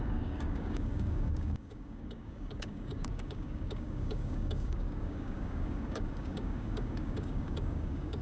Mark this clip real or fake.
fake